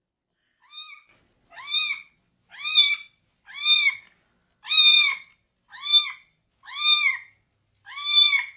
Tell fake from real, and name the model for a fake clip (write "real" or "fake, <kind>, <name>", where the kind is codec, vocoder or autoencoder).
real